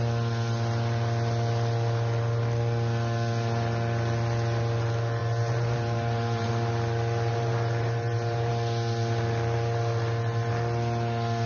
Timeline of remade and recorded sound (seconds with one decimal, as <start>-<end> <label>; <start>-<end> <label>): 0.0-5.2 recorded; 5.2-6.5 remade; 6.5-7.3 recorded; 7.3-8.5 remade; 8.5-11.5 recorded